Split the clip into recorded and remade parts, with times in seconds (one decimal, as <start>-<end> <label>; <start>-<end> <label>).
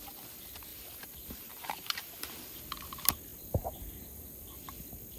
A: 0.0-0.7 recorded; 0.7-2.6 remade; 2.6-5.2 recorded